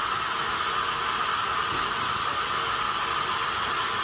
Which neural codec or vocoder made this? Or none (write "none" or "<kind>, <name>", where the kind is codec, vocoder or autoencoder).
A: none